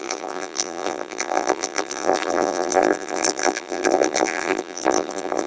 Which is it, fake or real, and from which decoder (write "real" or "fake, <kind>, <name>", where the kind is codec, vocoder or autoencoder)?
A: fake, vocoder, BigVGAN v2